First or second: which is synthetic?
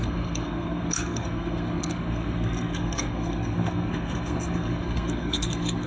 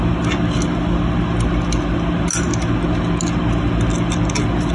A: first